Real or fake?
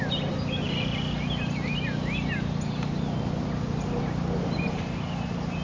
real